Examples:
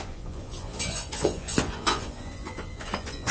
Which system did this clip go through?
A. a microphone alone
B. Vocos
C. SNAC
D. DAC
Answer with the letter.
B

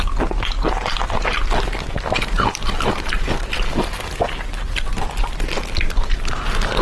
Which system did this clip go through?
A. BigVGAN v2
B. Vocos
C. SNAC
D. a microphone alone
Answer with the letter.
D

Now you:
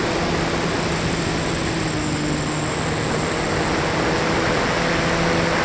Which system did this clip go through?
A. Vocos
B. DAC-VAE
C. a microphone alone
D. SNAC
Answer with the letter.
C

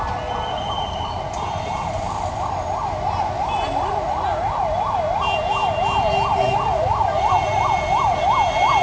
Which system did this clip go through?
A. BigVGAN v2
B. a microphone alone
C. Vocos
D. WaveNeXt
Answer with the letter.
B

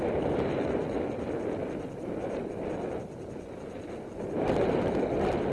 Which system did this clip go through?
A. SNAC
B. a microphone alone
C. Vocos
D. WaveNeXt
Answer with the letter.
B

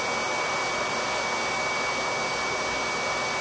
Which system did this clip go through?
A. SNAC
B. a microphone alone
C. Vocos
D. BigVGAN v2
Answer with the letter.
B